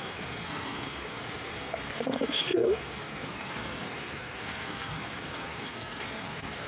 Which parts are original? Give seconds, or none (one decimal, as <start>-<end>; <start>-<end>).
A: none